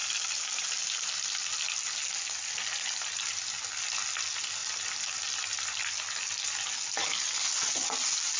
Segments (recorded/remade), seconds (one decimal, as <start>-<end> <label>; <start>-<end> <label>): 0.0-8.4 recorded